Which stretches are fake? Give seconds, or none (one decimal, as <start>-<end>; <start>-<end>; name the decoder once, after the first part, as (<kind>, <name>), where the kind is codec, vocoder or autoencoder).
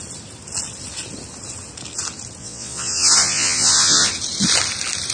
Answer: 2.4-4.1 (vocoder, Vocos)